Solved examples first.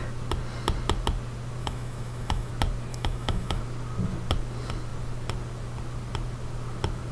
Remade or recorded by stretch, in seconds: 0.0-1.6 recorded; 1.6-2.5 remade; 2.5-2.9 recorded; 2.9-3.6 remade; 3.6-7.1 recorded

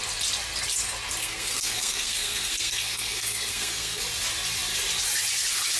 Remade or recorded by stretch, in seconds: 0.0-1.2 recorded; 1.2-4.0 remade; 4.0-5.8 recorded